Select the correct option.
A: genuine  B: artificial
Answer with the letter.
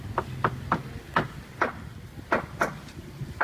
A